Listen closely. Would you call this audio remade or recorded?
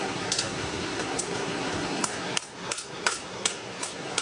remade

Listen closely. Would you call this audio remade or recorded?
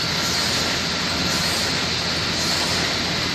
recorded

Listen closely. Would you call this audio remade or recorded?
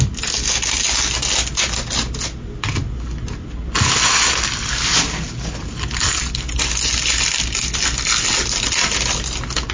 recorded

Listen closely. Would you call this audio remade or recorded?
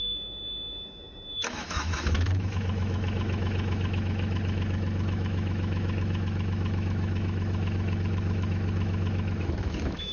remade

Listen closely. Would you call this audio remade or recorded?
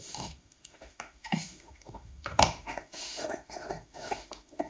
remade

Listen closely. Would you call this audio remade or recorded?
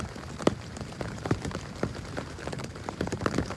remade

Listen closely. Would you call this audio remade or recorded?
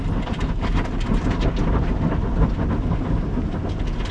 recorded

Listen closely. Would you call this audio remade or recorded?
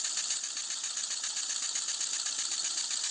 recorded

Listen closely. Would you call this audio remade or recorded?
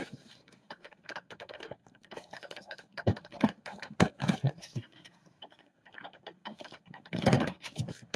remade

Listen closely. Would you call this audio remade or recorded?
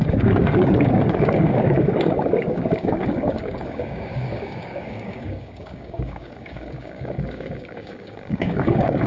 remade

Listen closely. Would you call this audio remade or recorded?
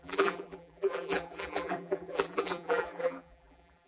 remade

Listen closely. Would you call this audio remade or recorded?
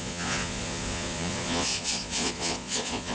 remade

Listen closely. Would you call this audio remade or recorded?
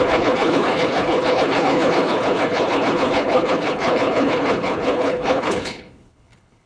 remade